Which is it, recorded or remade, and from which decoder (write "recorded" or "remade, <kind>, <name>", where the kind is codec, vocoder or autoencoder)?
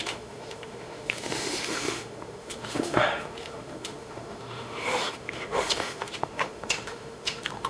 remade, autoencoder, DAC-VAE